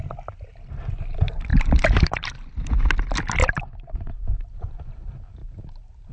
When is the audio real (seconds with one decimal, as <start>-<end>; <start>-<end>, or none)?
0.0-1.5; 2.3-3.4; 3.9-6.1